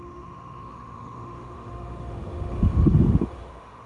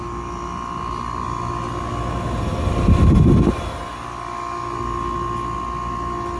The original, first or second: second